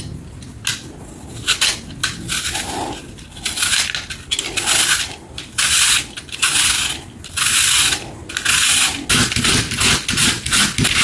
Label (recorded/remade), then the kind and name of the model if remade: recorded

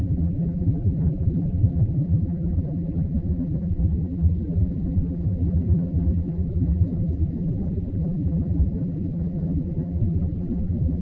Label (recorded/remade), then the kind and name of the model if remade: remade, vocoder, BigVGAN v2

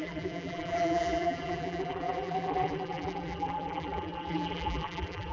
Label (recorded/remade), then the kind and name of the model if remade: remade, vocoder, BigVGAN v2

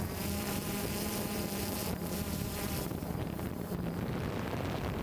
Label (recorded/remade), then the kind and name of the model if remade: remade, vocoder, BigVGAN v2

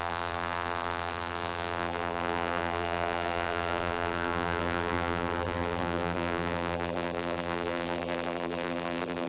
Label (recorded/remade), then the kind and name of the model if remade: remade, vocoder, BigVGAN v2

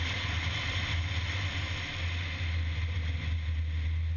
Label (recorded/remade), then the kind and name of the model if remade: recorded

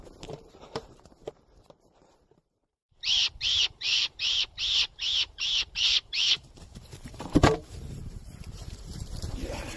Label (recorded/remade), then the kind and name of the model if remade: remade, vocoder, BigVGAN v2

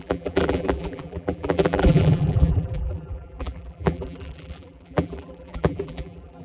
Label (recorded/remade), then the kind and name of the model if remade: remade, vocoder, BigVGAN v2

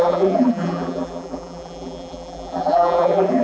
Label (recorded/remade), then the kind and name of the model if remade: remade, vocoder, BigVGAN v2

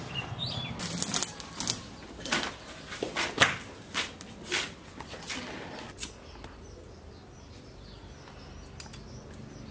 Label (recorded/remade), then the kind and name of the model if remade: recorded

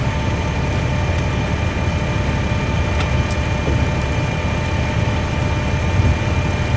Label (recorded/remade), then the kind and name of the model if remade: recorded